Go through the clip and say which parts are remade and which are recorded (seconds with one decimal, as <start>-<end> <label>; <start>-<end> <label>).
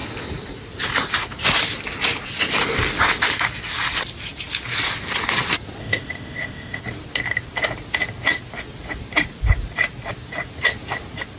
0.0-5.8 recorded; 5.8-6.8 remade; 6.8-11.4 recorded